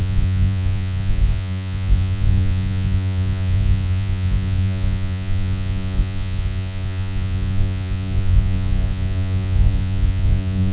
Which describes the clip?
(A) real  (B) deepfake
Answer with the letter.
B